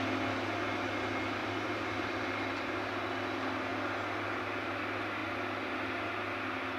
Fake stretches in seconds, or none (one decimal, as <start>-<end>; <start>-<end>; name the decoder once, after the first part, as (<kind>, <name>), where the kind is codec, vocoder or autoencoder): 1.4-2.7 (vocoder, BigVGAN v2)